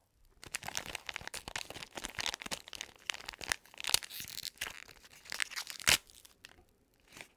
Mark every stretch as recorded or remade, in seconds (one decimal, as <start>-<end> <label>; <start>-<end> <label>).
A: 0.0-7.4 recorded